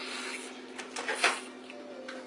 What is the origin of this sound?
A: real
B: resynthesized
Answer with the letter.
A